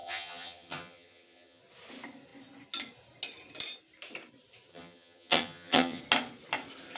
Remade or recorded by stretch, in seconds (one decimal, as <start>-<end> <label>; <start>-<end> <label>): 0.0-1.6 remade; 1.6-4.7 recorded; 4.7-6.0 remade; 6.0-7.0 recorded